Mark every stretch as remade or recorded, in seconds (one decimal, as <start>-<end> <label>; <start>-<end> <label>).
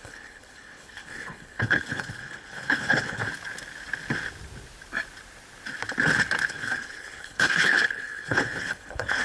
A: 0.0-3.2 remade; 3.2-6.5 recorded; 6.5-9.2 remade